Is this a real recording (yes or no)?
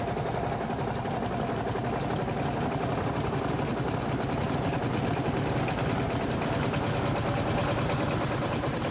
yes